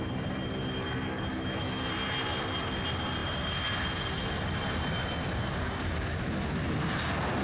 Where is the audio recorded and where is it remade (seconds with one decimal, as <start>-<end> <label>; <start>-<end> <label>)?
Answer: 0.0-1.3 recorded; 1.3-1.9 remade; 1.9-7.4 recorded